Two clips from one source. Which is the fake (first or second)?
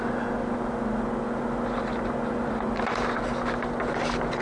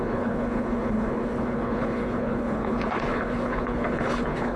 second